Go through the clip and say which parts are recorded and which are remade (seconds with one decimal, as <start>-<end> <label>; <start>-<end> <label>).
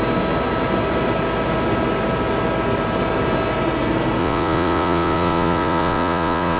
0.0-4.2 recorded; 4.2-6.6 remade